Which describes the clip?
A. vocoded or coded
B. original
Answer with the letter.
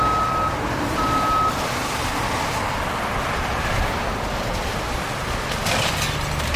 B